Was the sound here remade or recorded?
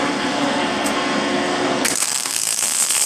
remade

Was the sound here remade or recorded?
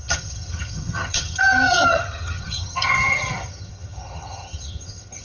remade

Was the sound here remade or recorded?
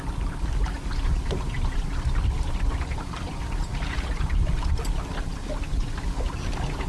recorded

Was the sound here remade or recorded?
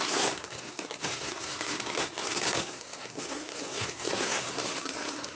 remade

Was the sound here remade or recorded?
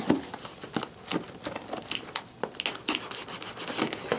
recorded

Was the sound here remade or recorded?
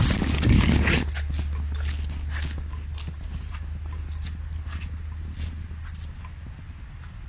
recorded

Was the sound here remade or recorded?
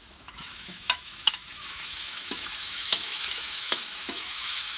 remade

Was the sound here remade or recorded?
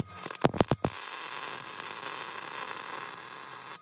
recorded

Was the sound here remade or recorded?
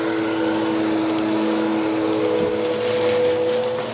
recorded